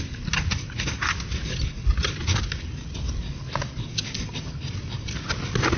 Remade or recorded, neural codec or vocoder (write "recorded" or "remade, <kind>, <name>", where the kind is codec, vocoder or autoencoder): recorded